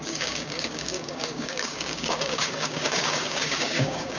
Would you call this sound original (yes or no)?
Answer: no